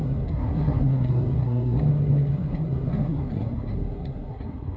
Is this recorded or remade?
remade